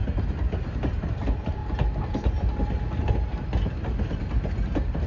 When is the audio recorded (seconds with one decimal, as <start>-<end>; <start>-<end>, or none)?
0.0-5.1

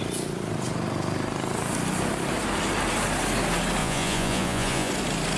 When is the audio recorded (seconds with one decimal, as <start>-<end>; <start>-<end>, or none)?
0.0-3.8; 4.9-5.4

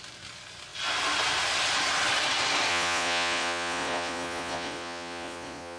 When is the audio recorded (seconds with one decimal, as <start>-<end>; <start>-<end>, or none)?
0.0-2.7

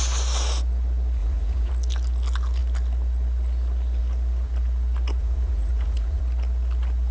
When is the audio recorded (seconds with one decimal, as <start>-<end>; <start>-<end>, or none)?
0.0-1.2; 1.7-5.2; 6.2-7.1